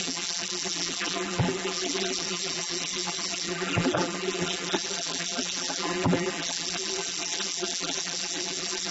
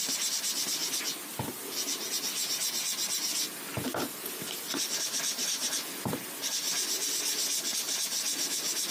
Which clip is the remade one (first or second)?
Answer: first